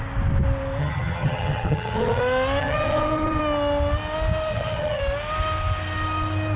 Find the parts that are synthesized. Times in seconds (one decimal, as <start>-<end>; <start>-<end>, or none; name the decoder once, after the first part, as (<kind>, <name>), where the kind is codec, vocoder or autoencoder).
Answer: 0.8-2.2 (vocoder, HiFi-GAN); 2.6-3.4; 4.5-5.0